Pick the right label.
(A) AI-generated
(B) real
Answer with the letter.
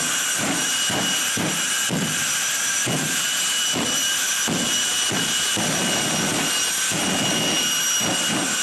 A